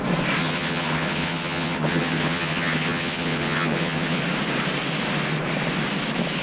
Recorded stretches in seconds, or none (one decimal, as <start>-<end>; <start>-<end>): 0.0-0.4; 4.2-6.4